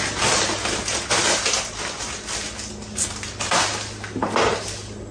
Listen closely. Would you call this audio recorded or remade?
recorded